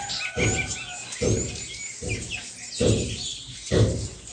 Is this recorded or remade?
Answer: recorded